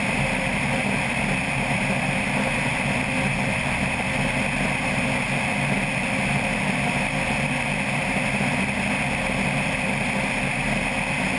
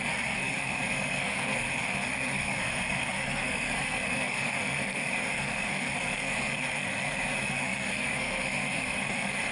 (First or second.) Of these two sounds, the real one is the first